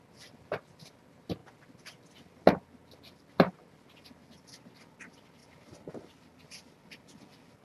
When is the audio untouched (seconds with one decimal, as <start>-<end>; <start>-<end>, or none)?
0.0-7.6